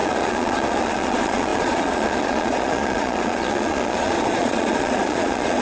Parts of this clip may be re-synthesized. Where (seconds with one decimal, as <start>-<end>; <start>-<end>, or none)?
0.0-5.6